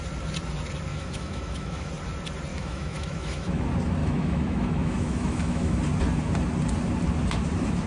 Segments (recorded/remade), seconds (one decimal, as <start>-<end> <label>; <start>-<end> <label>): 0.0-0.9 recorded; 0.9-1.9 remade; 1.9-2.5 recorded; 2.5-3.6 remade; 3.6-4.0 recorded; 4.0-5.8 remade; 5.8-7.9 recorded